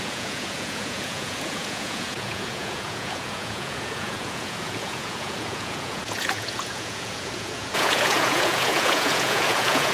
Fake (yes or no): yes